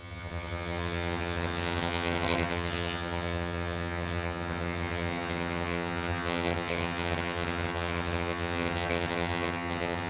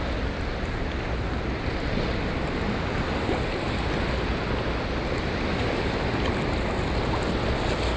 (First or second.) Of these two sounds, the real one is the second